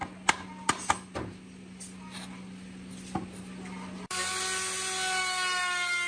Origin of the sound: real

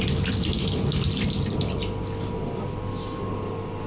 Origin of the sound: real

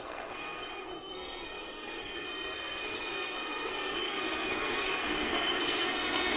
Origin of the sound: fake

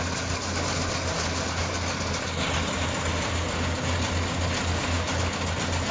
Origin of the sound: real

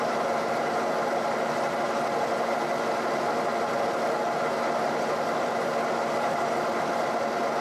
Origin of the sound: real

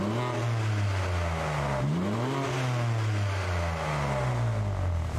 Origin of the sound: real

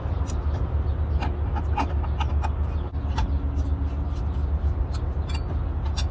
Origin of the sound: real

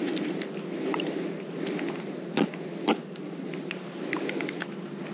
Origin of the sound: real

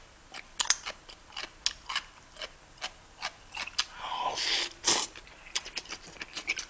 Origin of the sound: real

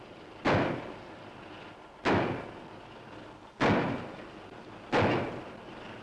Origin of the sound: real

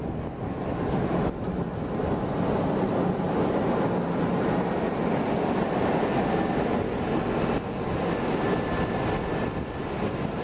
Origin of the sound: real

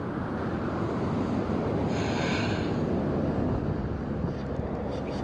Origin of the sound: real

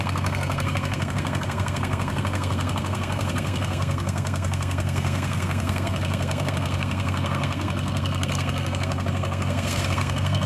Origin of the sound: fake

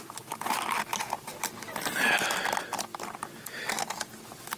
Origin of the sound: real